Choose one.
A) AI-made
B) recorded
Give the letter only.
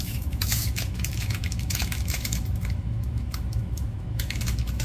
A